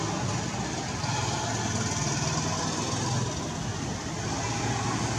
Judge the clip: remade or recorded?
recorded